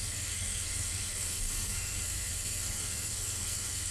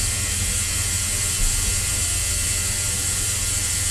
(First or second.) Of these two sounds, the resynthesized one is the first